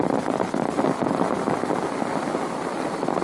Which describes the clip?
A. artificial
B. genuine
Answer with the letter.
B